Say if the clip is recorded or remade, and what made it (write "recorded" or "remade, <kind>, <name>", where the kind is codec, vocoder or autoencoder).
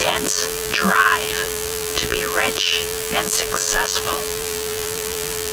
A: remade, vocoder, BigVGAN v2